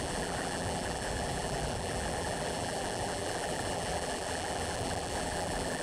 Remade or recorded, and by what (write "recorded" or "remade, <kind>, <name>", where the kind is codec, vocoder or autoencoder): remade, vocoder, BigVGAN v2